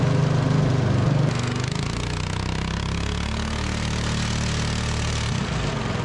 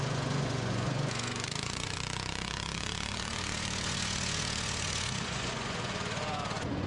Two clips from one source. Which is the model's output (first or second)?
second